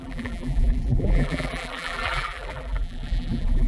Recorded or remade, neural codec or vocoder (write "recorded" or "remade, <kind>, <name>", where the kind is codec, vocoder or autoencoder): remade, vocoder, BigVGAN v2